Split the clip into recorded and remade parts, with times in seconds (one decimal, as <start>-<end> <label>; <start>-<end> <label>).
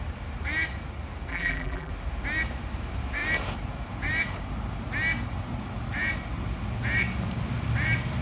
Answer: 0.0-1.3 recorded; 1.3-1.9 remade; 1.9-8.2 recorded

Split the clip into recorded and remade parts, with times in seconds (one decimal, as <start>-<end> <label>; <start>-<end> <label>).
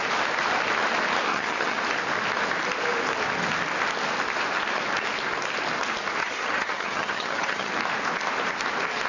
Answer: 0.0-1.3 recorded; 1.3-1.8 remade; 1.8-6.2 recorded; 6.2-7.7 remade; 7.7-9.1 recorded